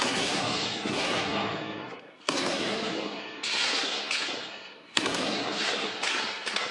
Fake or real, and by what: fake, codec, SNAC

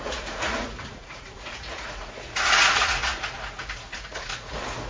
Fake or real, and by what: fake, vocoder, Vocos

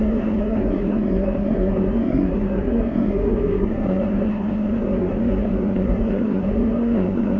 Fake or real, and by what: fake, codec, SNAC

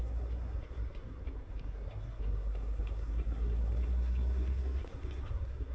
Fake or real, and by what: fake, codec, SNAC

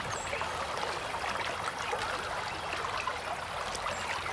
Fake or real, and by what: real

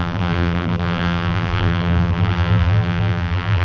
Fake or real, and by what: fake, vocoder, BigVGAN v2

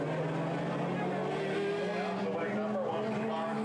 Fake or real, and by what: real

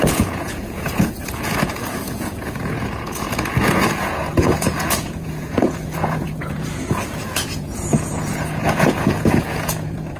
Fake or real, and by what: fake, vocoder, Vocos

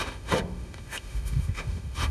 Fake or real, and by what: fake, autoencoder, DAC-VAE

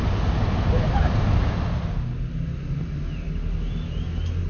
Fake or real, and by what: real